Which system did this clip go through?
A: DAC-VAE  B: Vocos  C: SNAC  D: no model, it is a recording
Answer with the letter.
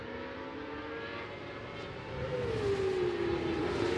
D